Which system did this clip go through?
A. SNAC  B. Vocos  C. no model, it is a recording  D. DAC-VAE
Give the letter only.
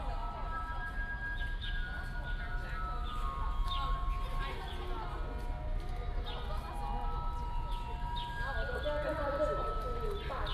C